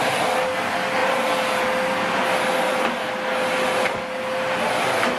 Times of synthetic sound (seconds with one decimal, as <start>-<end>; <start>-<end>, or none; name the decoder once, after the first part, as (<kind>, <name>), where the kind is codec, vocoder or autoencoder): none